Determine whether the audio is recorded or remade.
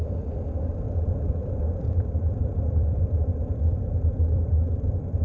remade